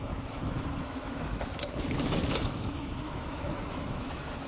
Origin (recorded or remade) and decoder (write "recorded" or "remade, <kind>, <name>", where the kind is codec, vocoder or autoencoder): remade, autoencoder, DAC-VAE